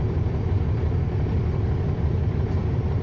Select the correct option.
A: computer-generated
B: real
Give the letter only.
B